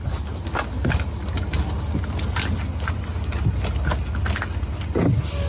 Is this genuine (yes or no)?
yes